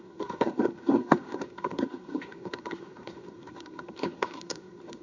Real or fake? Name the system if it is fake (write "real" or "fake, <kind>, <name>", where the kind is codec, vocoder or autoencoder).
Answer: fake, codec, SNAC